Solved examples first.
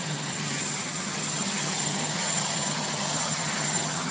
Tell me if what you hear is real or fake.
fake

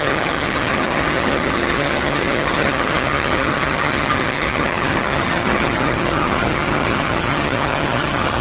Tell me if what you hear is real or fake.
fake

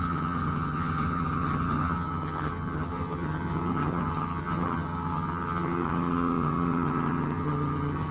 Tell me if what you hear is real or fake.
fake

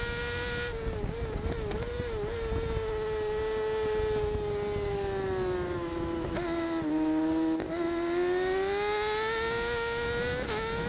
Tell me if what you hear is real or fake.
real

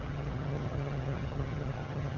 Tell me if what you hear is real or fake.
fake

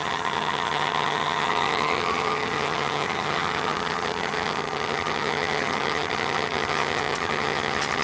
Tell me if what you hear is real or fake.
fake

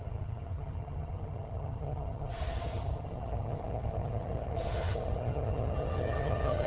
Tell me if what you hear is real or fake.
fake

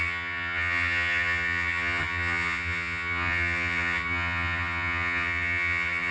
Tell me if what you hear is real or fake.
fake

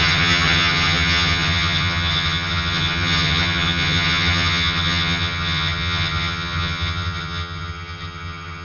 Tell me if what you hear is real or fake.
fake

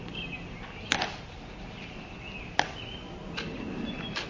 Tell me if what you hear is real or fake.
real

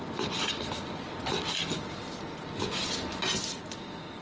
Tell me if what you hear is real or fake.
real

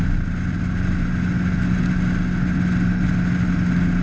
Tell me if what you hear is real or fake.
real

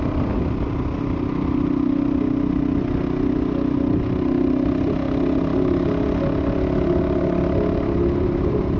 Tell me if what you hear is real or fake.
real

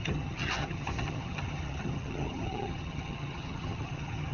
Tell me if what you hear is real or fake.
fake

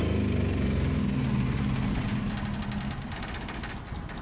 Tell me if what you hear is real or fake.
real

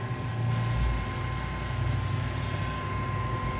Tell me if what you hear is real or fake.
real